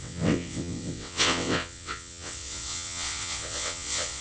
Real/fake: fake